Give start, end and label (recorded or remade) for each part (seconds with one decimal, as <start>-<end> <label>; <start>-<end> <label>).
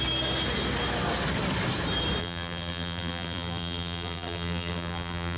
0.0-2.2 recorded; 2.2-5.4 remade